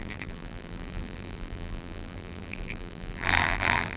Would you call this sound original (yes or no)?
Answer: no